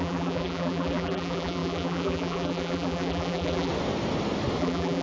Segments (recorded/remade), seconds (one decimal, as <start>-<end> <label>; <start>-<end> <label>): 0.0-3.7 remade; 3.7-4.6 recorded; 4.6-5.0 remade